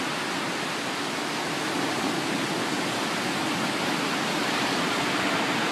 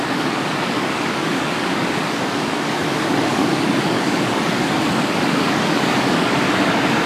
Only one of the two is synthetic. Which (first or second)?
second